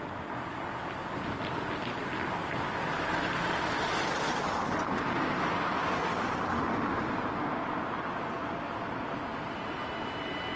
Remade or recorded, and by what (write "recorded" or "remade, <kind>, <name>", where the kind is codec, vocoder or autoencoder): recorded